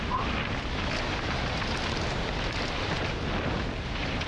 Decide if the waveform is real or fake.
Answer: real